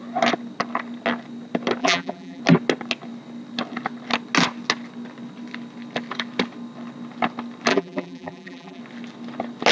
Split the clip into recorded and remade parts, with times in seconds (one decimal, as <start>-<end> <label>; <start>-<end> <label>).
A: 0.0-1.8 recorded; 1.8-2.4 remade; 2.4-7.7 recorded; 7.7-8.8 remade; 8.8-9.7 recorded